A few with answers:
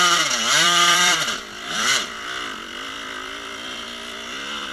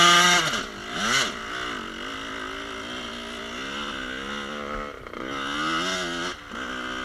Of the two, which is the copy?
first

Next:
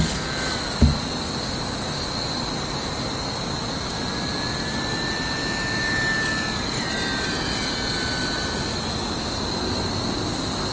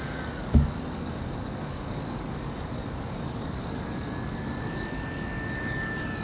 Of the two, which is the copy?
second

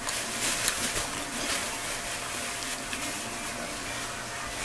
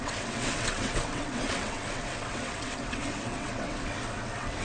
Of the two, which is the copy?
second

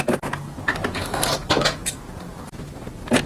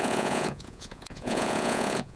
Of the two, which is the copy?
second